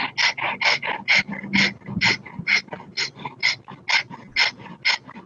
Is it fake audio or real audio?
real